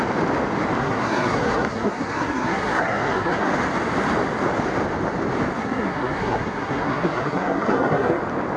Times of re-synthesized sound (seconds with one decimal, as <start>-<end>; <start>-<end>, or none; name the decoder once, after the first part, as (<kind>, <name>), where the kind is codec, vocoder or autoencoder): 0.8-3.5 (codec, SNAC); 5.6-8.2